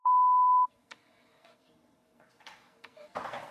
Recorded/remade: remade